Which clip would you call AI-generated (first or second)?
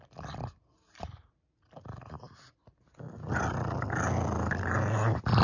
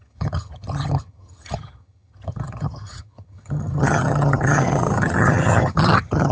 second